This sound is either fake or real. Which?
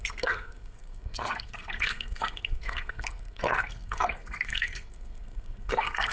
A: fake